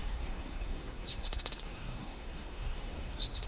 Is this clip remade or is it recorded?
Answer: remade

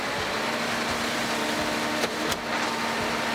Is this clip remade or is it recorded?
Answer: recorded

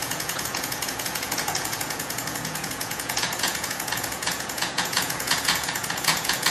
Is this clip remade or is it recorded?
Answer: remade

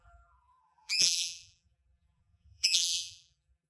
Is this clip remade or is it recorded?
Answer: remade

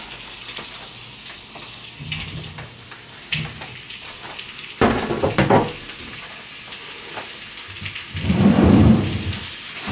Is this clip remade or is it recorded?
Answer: recorded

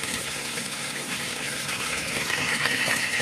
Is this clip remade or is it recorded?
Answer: remade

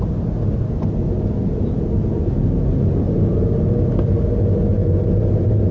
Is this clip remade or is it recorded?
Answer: recorded